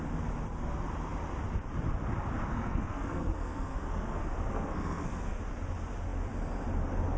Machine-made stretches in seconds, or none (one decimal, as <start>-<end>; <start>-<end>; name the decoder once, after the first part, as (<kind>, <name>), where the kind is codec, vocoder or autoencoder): 2.5-5.4 (codec, SNAC)

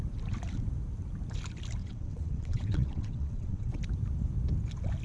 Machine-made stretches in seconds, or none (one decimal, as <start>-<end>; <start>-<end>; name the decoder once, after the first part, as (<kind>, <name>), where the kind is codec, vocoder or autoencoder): 1.8-3.8 (vocoder, WaveNeXt)

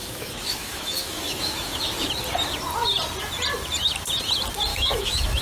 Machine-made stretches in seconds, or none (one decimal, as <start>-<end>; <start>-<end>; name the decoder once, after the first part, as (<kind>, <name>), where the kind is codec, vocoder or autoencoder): 0.0-2.1 (autoencoder, DAC-VAE); 4.7-5.4

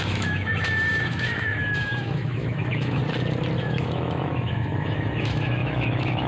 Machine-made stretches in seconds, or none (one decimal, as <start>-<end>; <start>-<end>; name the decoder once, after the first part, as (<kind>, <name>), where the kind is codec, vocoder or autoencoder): 0.0-3.0 (autoencoder, DAC-VAE); 3.6-6.3

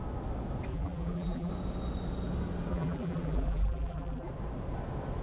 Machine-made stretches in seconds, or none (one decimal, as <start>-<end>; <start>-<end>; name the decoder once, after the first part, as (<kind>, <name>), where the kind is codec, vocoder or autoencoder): 0.7-1.5 (vocoder, BigVGAN v2); 2.7-4.3

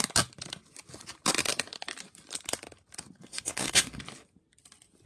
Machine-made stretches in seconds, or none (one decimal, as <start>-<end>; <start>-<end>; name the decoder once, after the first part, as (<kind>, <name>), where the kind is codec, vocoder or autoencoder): 3.2-4.0 (codec, SNAC)

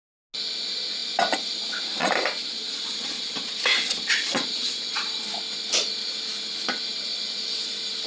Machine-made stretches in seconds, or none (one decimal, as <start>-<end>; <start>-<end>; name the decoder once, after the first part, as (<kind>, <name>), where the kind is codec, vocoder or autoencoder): 2.4-5.0 (vocoder, Vocos)